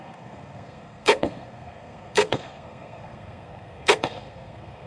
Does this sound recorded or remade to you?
remade